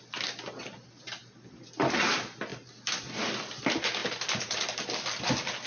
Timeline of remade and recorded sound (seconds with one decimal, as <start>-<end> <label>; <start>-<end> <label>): 0.0-2.5 recorded; 2.5-3.1 remade; 3.1-4.0 recorded; 4.0-5.2 remade; 5.2-5.7 recorded